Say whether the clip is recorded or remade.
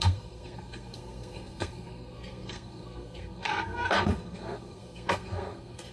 remade